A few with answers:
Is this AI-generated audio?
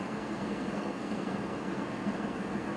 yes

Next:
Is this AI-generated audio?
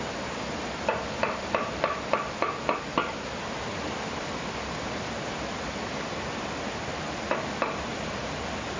no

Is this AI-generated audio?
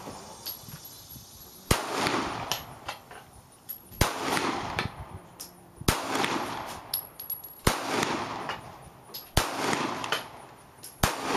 no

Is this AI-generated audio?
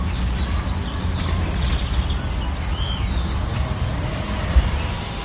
no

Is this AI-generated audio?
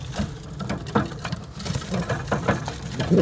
no